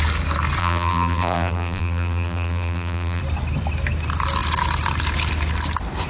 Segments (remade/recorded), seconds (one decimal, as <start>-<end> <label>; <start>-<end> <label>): 0.0-0.6 recorded; 0.6-3.2 remade; 3.2-6.1 recorded